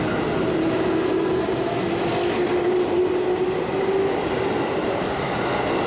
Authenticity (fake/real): real